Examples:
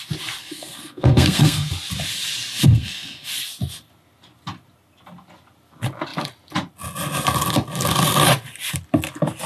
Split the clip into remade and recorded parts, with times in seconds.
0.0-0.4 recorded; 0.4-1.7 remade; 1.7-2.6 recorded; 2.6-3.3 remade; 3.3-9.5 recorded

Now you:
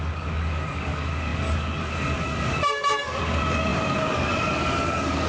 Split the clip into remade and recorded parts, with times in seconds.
0.0-5.3 remade

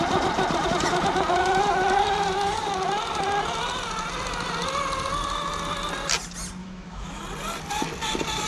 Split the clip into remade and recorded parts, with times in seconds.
0.0-6.6 recorded; 6.6-7.2 remade; 7.2-8.5 recorded